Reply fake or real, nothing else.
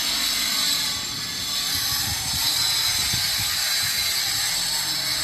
real